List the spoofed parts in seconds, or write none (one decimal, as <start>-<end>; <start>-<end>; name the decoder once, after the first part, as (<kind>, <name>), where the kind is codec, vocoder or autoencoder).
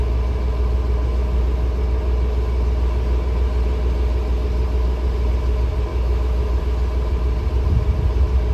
5.9-6.6 (autoencoder, DAC-VAE)